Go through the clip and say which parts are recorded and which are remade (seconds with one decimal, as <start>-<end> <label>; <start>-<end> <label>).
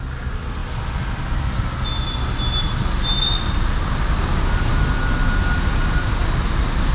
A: 0.0-6.9 recorded